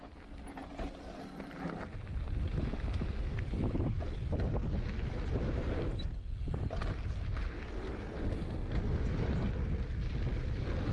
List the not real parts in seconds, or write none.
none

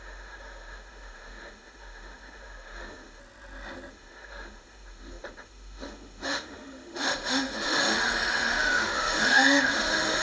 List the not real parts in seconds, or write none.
0.0-3.2 (autoencoder, DAC-VAE); 3.9-10.2